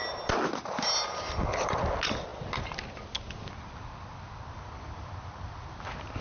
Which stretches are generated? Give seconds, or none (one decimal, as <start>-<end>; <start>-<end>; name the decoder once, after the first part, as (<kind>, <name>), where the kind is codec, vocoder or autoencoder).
none